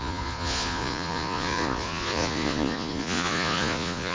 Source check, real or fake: fake